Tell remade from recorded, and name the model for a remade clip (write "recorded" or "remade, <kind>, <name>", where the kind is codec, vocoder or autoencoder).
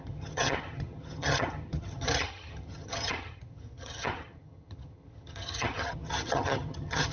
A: remade, vocoder, HiFi-GAN